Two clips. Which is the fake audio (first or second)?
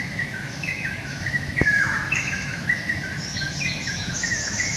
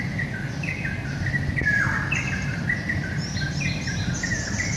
first